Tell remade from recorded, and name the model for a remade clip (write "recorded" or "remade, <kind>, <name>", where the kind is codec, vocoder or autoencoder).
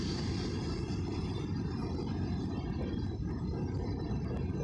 remade, vocoder, BigVGAN v2